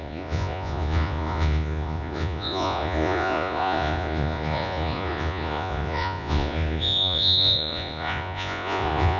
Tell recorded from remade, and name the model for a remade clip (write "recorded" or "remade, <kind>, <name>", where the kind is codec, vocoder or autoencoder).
remade, vocoder, Vocos